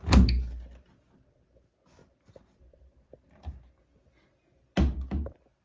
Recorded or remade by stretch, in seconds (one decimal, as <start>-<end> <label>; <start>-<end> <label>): 0.0-5.6 recorded

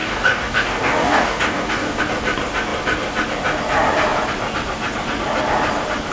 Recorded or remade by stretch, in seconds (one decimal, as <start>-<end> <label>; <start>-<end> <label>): 0.0-2.0 remade; 2.0-6.1 recorded